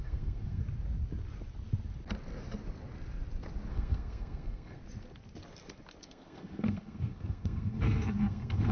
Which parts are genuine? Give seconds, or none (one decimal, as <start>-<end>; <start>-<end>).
0.6-3.7; 4.8-6.0